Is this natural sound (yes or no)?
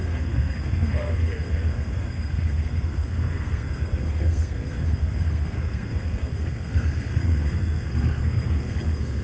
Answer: no